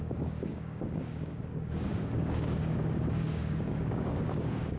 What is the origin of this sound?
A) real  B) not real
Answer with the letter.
B